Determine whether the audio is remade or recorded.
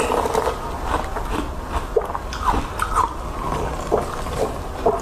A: recorded